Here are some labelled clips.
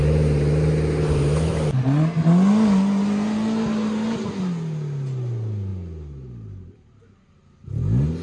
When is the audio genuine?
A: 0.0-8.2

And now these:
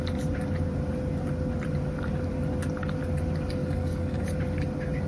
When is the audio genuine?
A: 0.0-3.6; 4.3-5.1

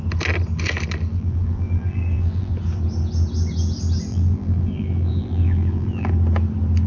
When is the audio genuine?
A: 0.0-1.1; 2.5-4.1; 6.1-6.9